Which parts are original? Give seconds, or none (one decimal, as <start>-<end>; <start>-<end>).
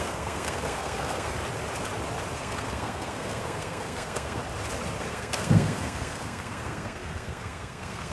1.4-2.3; 4.4-5.0